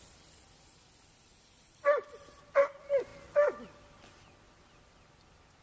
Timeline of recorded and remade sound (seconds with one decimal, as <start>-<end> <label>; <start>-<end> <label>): 0.0-5.6 recorded